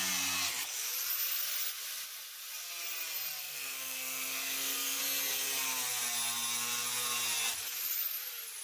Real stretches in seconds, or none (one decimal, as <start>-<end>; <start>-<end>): 0.0-3.4; 5.0-8.6